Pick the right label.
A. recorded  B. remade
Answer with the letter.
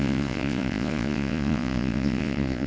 B